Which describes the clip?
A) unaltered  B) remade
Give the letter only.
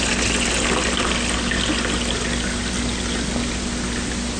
A